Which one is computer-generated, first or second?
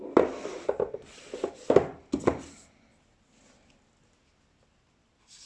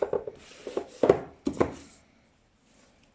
second